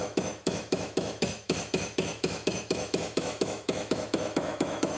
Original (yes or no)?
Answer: no